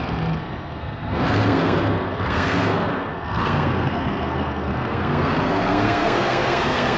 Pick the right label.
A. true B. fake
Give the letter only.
B